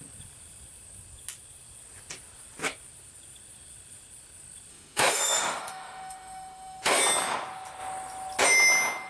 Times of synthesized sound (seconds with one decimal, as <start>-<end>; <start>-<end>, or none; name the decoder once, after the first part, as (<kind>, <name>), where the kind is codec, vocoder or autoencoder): 4.7-7.0 (autoencoder, DAC-VAE)